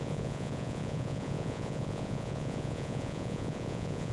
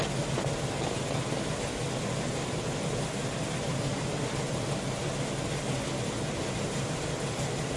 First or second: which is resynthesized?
first